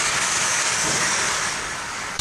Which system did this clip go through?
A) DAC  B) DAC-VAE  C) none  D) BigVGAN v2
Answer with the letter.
A